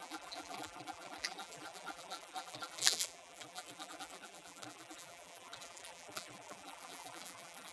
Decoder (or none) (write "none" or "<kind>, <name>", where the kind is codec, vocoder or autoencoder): vocoder, BigVGAN v2